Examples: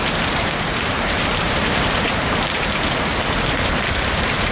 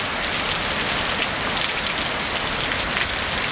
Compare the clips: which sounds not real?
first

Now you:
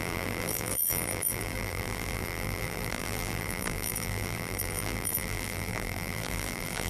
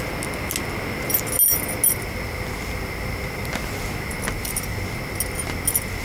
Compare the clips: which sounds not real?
first